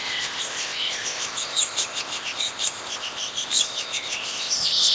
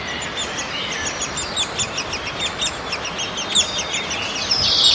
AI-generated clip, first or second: first